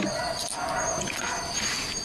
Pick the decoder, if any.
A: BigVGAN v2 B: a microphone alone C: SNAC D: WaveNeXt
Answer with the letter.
B